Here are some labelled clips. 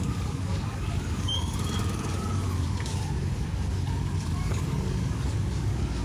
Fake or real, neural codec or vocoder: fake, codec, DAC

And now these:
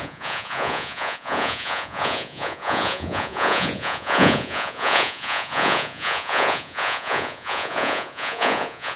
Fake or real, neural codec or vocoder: fake, vocoder, Vocos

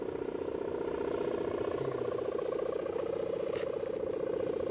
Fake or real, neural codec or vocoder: real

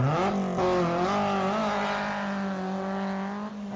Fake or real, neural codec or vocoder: real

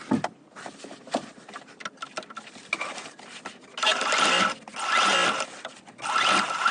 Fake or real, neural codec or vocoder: real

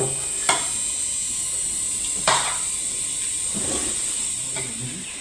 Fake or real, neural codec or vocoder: real